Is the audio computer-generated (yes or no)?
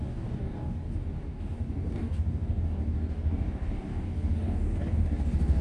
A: yes